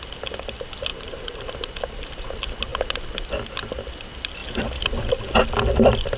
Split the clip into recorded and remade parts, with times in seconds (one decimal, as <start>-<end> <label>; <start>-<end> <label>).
0.0-0.9 recorded; 0.9-1.4 remade; 1.4-4.4 recorded; 4.4-5.1 remade; 5.1-6.2 recorded